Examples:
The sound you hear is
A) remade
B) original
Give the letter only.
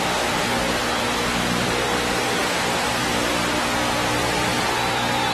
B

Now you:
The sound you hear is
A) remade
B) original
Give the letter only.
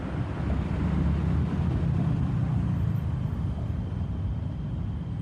B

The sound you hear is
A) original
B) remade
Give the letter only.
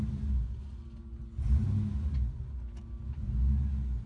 A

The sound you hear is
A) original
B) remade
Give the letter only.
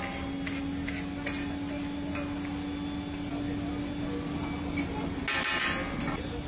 A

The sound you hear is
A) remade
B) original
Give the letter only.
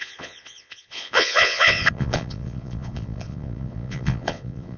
A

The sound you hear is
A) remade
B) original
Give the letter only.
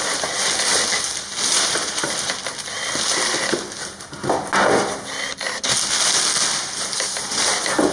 B